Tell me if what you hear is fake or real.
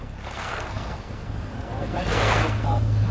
fake